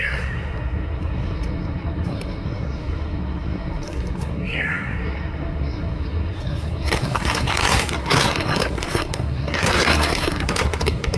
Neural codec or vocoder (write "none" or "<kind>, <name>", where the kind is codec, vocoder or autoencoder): codec, SNAC